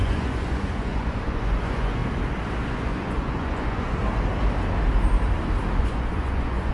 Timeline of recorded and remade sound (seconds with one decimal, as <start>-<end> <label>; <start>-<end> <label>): 0.0-2.0 remade; 2.0-2.7 recorded; 2.7-4.0 remade; 4.0-5.8 recorded; 5.8-6.7 remade